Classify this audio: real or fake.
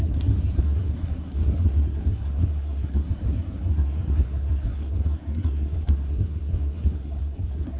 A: fake